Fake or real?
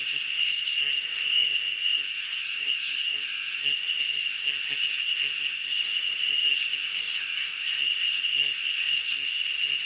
fake